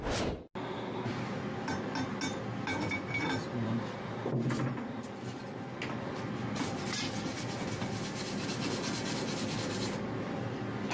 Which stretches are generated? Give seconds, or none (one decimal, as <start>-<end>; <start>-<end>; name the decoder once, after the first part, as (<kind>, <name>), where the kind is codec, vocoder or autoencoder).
none